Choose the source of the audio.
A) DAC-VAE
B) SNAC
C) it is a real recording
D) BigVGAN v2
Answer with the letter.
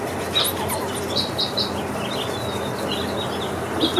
C